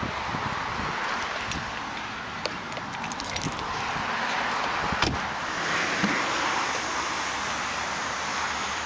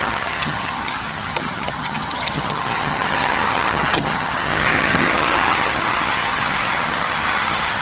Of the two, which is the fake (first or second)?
second